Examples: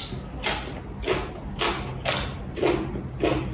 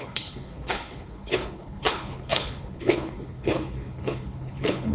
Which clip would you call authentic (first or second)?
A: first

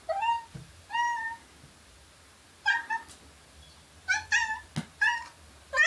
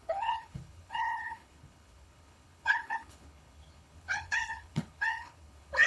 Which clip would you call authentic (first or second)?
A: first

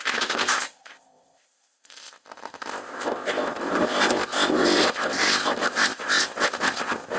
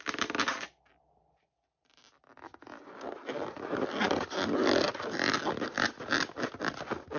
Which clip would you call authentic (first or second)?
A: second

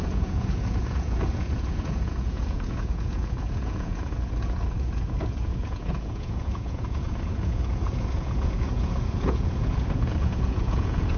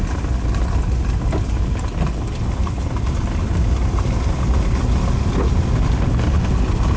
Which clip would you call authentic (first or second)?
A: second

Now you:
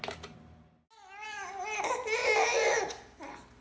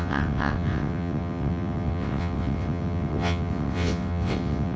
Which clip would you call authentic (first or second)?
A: first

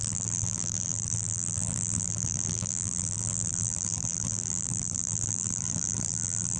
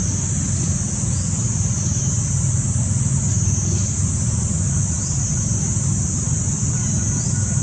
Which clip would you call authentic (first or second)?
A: second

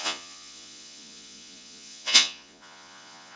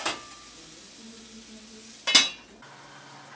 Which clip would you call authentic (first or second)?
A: second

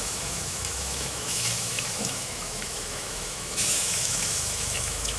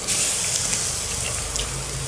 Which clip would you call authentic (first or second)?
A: second